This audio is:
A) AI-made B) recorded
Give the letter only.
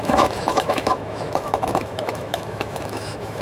A